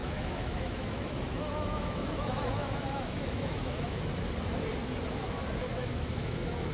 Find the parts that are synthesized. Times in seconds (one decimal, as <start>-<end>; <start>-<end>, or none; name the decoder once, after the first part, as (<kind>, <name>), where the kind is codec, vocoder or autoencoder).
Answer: 0.0-4.0 (autoencoder, DAC-VAE); 5.7-6.7